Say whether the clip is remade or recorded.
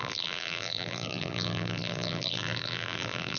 remade